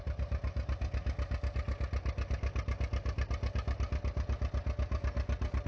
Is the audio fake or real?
real